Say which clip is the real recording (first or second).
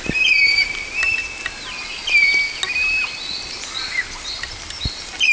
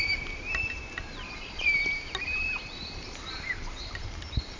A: first